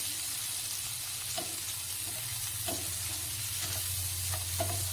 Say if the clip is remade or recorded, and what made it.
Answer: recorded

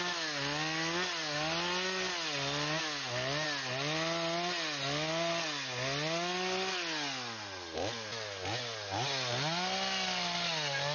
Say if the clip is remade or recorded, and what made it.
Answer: recorded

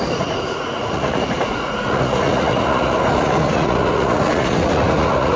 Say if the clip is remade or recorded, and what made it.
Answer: remade, vocoder, Vocos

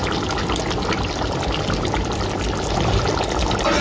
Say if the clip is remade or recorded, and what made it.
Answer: recorded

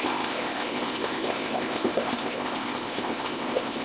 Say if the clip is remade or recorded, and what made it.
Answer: remade, codec, ZipCodec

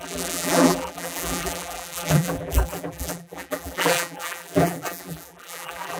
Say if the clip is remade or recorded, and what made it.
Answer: remade, vocoder, BigVGAN v2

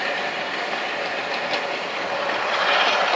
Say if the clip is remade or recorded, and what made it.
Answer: recorded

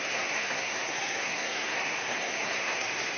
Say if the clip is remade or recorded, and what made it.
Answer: remade, codec, SNAC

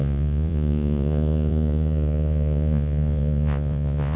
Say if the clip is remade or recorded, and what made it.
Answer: remade, vocoder, Vocos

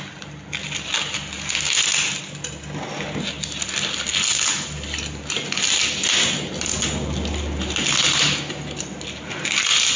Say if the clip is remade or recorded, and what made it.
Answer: recorded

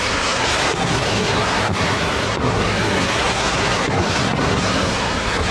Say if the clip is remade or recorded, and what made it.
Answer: remade, codec, SNAC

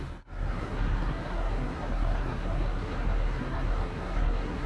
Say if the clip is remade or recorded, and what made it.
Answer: remade, codec, SNAC